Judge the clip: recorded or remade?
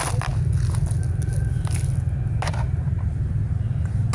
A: recorded